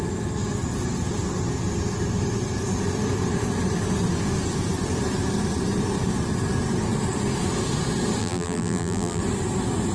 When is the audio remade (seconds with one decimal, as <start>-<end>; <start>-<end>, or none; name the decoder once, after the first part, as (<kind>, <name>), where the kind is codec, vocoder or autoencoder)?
8.2-9.2 (vocoder, BigVGAN v2)